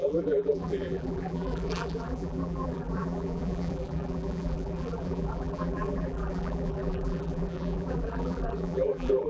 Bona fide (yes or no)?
no